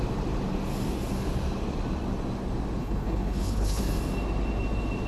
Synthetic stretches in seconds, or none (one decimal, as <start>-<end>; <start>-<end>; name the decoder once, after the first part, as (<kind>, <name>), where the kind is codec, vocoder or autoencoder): 2.8-3.8 (codec, HILCodec)